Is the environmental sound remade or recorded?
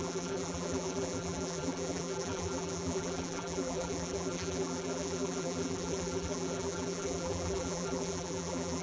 remade